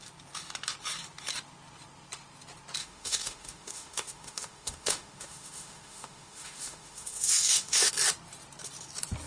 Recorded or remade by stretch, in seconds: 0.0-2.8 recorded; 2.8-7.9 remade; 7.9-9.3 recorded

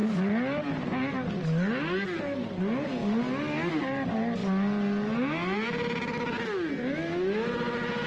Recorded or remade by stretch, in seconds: 0.0-3.7 recorded; 3.7-4.4 remade; 4.4-8.1 recorded

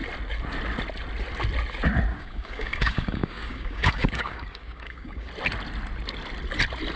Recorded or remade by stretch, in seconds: 0.0-2.1 recorded; 2.1-5.3 remade; 5.3-7.0 recorded

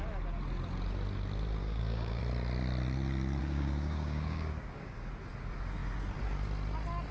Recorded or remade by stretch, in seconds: 0.0-1.6 recorded; 1.6-2.2 remade; 2.2-3.4 recorded; 3.4-5.1 remade; 5.1-7.1 recorded

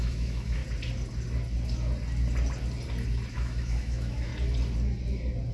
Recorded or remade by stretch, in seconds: 0.0-0.6 remade; 0.6-3.3 recorded; 3.3-4.3 remade; 4.3-5.5 recorded

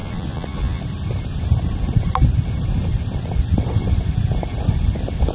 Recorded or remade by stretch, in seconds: 0.0-0.8 remade; 0.8-5.3 recorded

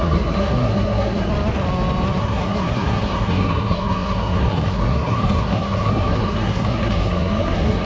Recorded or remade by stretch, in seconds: 0.0-1.3 remade; 1.3-2.2 recorded; 2.2-7.8 remade

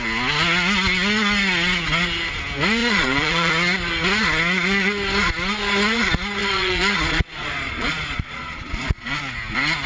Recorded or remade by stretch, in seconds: 0.0-2.8 recorded; 2.8-3.5 remade; 3.5-6.4 recorded; 6.4-9.2 remade; 9.2-9.9 recorded